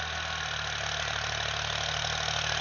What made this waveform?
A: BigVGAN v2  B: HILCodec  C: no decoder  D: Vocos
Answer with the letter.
C